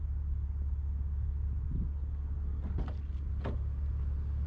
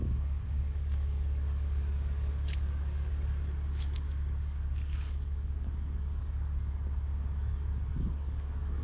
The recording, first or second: first